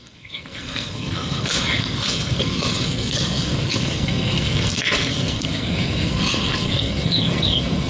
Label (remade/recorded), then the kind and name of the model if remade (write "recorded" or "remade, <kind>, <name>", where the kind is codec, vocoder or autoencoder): remade, codec, SNAC